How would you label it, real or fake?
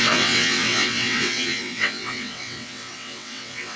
fake